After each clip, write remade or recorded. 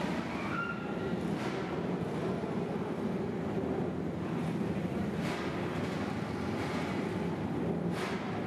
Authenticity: recorded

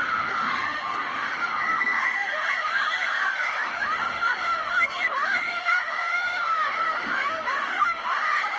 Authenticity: remade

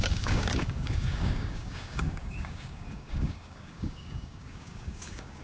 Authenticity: remade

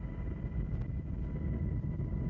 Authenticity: recorded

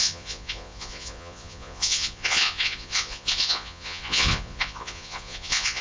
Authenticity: remade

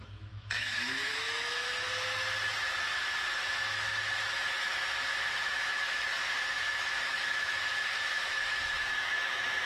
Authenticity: remade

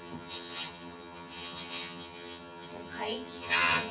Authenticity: remade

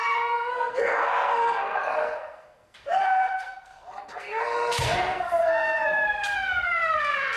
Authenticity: remade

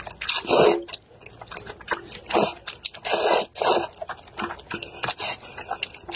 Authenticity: recorded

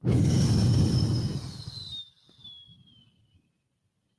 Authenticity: recorded